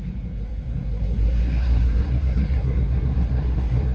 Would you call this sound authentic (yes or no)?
no